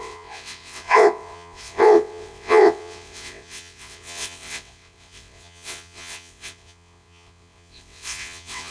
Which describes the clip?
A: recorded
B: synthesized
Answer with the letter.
B